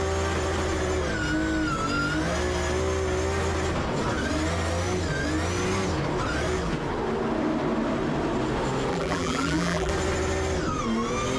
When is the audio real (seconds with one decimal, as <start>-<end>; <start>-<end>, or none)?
0.0-8.9; 9.9-11.4